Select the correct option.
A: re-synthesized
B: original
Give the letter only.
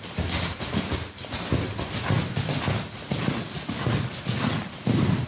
B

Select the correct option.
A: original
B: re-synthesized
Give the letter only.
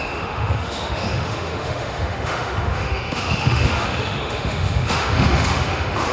B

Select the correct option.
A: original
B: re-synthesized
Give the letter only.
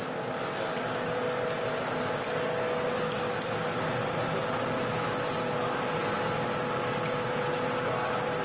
A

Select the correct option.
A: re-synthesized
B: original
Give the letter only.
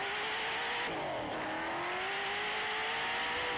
B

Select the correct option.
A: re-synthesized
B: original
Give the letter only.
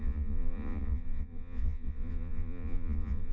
A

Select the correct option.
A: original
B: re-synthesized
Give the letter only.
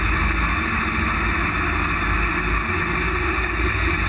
A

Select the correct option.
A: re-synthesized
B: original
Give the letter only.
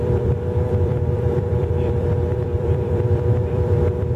A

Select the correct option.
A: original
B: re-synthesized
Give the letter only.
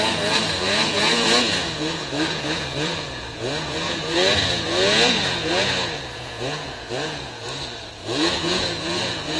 B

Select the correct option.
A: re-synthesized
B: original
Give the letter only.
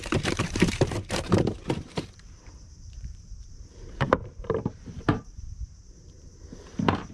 A